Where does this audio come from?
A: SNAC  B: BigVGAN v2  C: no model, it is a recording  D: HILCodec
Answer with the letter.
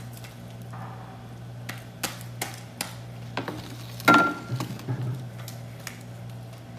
C